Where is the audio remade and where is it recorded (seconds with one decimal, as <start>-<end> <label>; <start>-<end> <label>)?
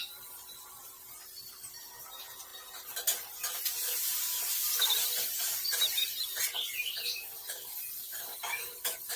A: 0.0-8.1 remade; 8.1-8.6 recorded; 8.6-9.2 remade